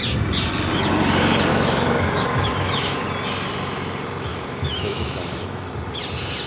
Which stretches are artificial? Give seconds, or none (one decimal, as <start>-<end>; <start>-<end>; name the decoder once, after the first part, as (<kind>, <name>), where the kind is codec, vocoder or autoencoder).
1.5-3.0 (autoencoder, DAC-VAE); 4.3-5.7